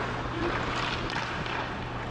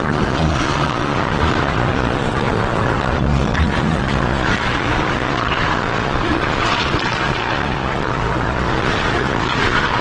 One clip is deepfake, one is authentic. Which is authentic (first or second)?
first